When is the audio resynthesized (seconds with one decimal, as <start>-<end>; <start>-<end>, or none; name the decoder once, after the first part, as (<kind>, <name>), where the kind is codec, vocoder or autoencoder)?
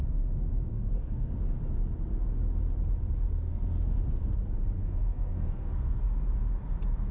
0.7-1.3 (codec, SNAC); 3.3-4.0; 4.8-6.0